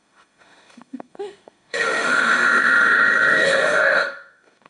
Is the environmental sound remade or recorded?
remade